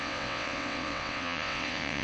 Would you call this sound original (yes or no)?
no